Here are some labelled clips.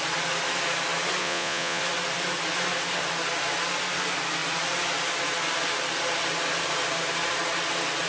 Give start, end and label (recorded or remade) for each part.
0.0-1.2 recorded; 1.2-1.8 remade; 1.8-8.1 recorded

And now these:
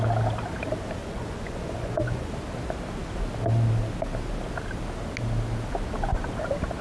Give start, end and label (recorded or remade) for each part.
0.0-1.0 recorded; 1.0-2.3 remade; 2.3-6.8 recorded

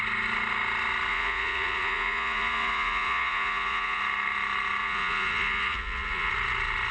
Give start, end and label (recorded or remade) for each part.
0.0-1.1 recorded; 1.1-4.0 remade; 4.0-4.8 recorded; 4.8-6.3 remade; 6.3-6.9 recorded

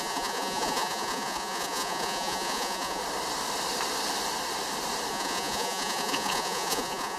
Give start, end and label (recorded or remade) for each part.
0.0-3.0 remade; 3.0-5.1 recorded; 5.1-7.2 remade

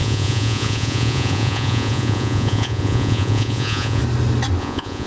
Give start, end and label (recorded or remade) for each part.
0.0-4.0 remade; 4.0-4.6 recorded; 4.6-5.1 remade

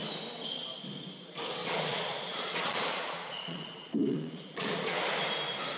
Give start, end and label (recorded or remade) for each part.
0.0-1.6 recorded; 1.6-5.0 remade; 5.0-5.8 recorded

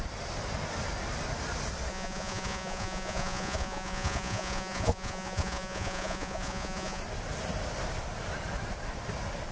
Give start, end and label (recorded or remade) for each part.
0.0-1.9 recorded; 1.9-7.0 remade; 7.0-9.5 recorded

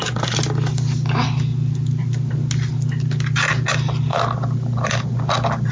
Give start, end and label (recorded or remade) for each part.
0.0-5.7 recorded